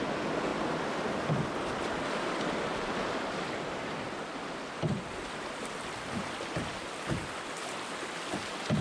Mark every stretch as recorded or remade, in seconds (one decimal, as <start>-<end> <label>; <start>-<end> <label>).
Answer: 0.0-8.8 recorded